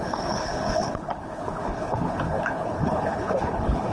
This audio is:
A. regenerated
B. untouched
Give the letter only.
A